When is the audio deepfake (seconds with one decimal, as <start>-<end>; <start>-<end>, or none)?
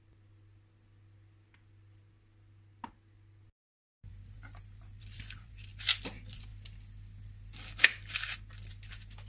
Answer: 4.1-6.0